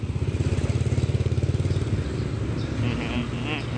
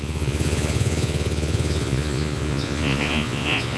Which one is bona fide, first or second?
first